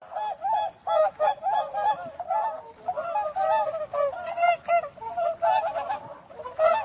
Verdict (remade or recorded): recorded